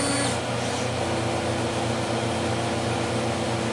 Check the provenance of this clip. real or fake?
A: real